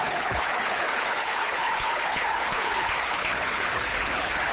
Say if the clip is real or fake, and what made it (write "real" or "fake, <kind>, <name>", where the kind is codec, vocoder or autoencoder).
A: fake, codec, HILCodec